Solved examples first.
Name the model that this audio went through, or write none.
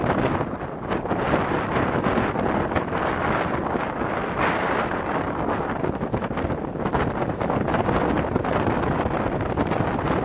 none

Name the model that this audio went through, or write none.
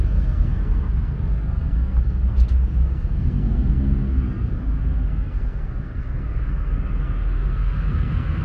codec, SNAC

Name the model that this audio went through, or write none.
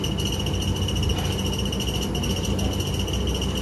none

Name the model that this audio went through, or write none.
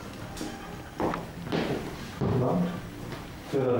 none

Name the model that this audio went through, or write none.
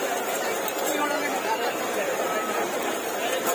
none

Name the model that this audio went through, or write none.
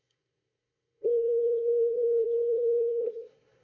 codec, SNAC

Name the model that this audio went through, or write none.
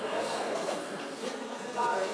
codec, SNAC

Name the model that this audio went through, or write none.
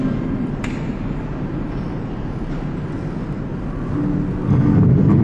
none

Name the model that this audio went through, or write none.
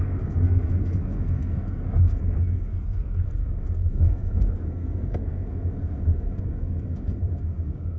codec, SNAC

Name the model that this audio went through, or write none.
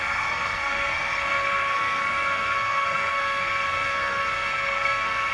codec, SNAC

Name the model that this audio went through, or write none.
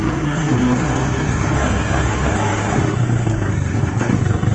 codec, SNAC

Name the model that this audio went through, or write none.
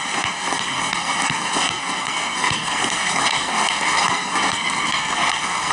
codec, SNAC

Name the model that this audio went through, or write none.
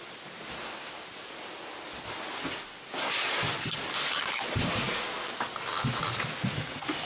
none